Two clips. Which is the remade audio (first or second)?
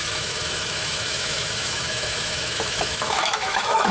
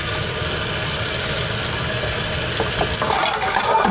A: first